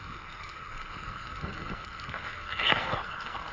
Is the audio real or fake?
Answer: fake